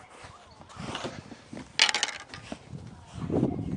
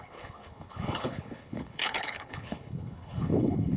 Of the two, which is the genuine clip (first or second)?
first